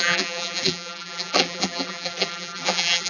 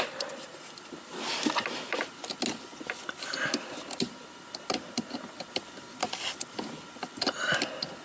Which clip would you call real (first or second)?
second